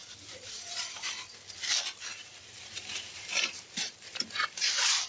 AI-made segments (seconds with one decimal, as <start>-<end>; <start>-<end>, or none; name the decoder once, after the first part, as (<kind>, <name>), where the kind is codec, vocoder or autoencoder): 0.0-1.1 (vocoder, BigVGAN v2); 2.1-4.2